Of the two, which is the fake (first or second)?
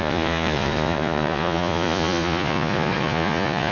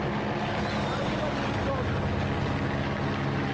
first